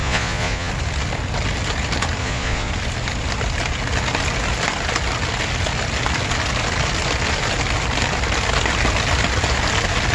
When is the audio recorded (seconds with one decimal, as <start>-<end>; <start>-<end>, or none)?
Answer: 0.7-2.2; 2.7-10.1